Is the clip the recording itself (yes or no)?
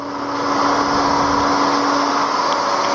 yes